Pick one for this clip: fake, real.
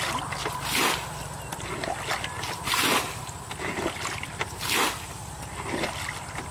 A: real